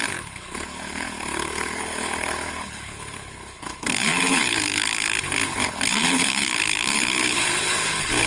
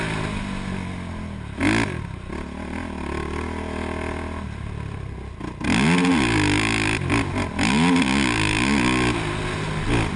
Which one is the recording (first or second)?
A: second